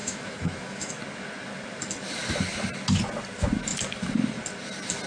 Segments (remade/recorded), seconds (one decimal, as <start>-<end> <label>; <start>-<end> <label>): 0.0-0.9 remade; 0.9-5.1 recorded